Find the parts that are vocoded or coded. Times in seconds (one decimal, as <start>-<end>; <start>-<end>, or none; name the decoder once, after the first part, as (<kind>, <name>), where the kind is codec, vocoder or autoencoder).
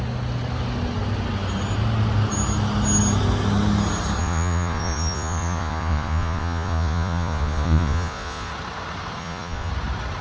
4.2-8.5 (vocoder, Vocos); 9.2-9.7